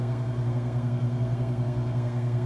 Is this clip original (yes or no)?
no